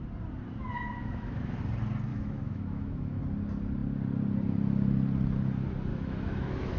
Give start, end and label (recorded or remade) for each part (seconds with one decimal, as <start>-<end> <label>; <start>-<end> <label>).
0.0-1.0 recorded; 1.0-1.6 remade; 1.6-2.1 recorded; 2.1-3.2 remade; 3.2-5.9 recorded; 5.9-6.8 remade